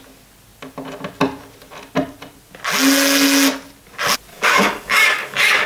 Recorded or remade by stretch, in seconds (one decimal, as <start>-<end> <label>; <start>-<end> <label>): 0.0-4.3 recorded; 4.3-5.7 remade